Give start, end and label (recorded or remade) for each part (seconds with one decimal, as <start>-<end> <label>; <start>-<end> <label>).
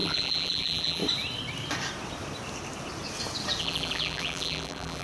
0.0-1.0 remade; 1.0-3.6 recorded; 3.6-5.0 remade